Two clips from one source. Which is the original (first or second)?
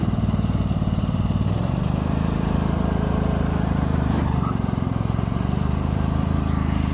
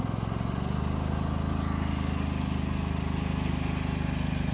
second